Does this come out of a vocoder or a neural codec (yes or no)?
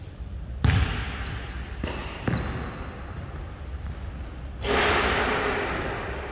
yes